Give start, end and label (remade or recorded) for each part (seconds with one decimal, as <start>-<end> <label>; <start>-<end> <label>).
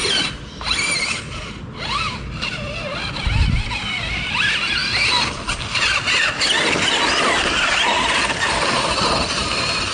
0.0-9.9 recorded